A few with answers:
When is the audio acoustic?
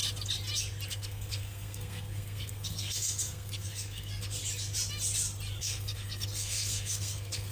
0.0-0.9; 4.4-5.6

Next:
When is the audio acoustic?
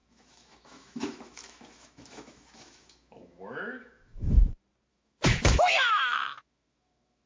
4.3-4.9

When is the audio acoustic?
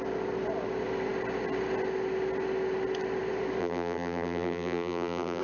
0.0-3.6